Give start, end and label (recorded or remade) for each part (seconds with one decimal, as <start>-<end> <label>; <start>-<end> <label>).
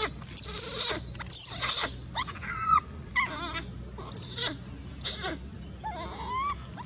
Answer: 0.0-2.2 recorded; 2.2-3.1 remade; 3.1-6.9 recorded